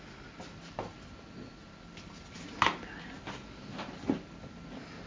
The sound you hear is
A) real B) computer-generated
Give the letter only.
A